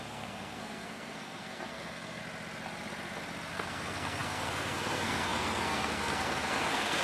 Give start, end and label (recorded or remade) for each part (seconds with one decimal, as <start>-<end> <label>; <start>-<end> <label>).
0.0-2.2 remade; 2.2-3.5 recorded; 3.5-7.0 remade